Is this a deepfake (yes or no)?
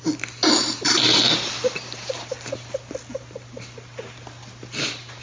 no